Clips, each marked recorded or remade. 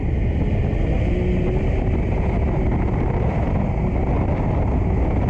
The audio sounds recorded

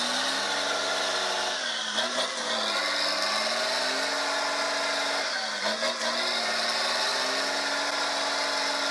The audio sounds recorded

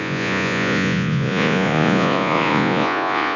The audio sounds remade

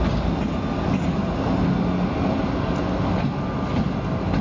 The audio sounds recorded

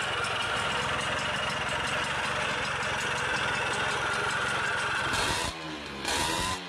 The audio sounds recorded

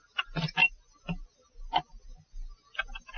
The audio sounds recorded